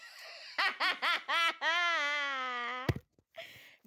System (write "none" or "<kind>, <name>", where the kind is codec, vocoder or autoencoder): none